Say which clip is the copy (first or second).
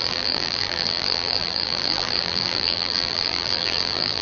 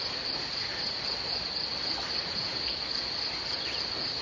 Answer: first